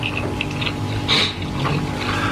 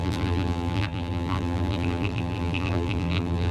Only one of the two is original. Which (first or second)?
first